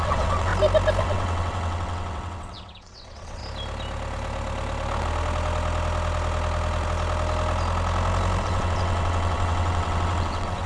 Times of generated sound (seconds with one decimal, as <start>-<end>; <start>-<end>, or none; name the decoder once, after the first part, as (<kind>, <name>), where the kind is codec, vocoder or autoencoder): 0.0-0.5 (vocoder, WaveNeXt); 1.0-3.4; 8.4-10.7